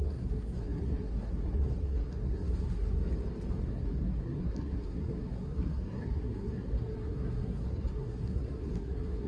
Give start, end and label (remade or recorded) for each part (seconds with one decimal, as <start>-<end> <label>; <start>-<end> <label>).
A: 0.0-3.0 remade; 3.0-3.6 recorded; 3.6-9.3 remade